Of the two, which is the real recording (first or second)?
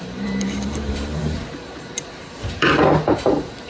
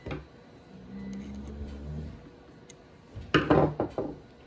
second